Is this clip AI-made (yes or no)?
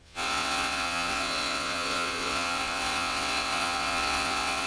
yes